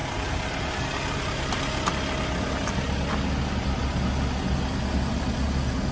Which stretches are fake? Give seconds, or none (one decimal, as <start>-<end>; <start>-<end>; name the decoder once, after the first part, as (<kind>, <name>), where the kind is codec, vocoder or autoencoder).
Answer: 0.0-0.7 (vocoder, BigVGAN v2)